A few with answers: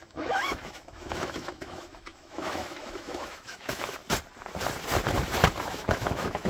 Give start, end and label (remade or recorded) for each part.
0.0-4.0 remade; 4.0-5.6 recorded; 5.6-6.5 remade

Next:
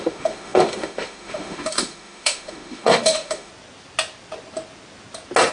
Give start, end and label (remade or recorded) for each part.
0.0-3.5 remade; 3.5-5.5 recorded

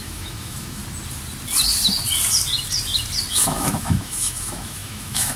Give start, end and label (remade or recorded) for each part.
0.0-0.8 remade; 0.8-3.3 recorded; 3.3-5.4 remade

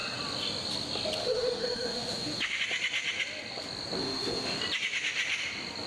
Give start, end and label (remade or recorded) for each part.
0.0-1.2 recorded; 1.2-2.6 remade; 2.6-4.0 recorded; 4.0-4.6 remade; 4.6-5.9 recorded

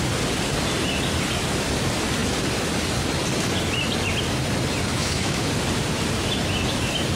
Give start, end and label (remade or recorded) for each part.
0.0-4.9 recorded; 4.9-5.5 remade; 5.5-7.2 recorded

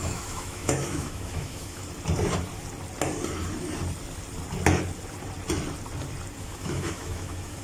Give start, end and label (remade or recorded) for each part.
0.0-1.8 remade; 1.8-6.4 recorded; 6.4-7.6 remade

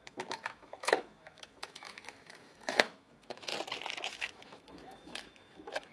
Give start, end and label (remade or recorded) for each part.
0.0-3.5 remade; 3.5-4.1 recorded; 4.1-5.9 remade

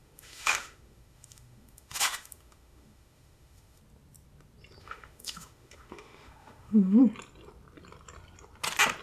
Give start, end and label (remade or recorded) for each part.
0.0-3.8 remade; 3.8-4.8 recorded; 4.8-7.0 remade; 7.0-9.0 recorded